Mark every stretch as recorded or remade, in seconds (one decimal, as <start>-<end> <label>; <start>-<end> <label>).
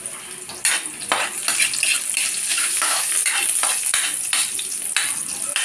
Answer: 0.0-2.5 recorded; 2.5-3.1 remade; 3.1-5.6 recorded